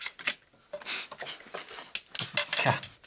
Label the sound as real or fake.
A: real